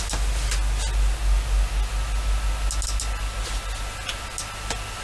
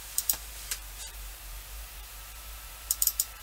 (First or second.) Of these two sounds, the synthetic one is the second